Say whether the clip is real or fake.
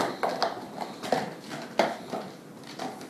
real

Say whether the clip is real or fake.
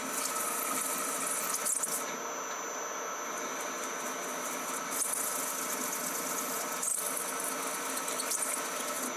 real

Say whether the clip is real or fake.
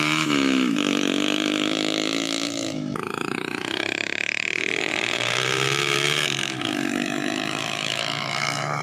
fake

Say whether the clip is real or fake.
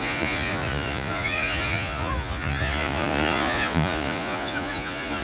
fake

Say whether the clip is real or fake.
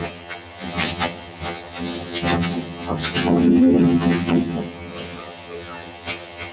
fake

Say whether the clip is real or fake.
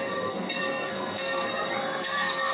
fake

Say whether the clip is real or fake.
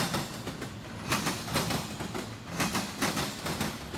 real